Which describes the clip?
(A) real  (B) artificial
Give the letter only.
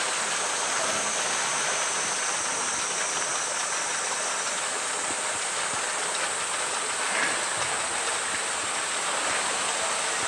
A